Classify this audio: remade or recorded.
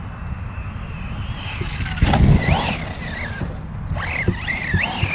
recorded